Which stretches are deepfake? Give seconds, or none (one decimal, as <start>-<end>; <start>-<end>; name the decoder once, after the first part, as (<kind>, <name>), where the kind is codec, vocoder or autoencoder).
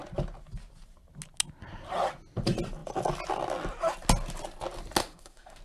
5.0-5.6 (autoencoder, DAC-VAE)